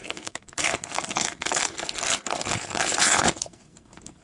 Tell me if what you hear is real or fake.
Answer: fake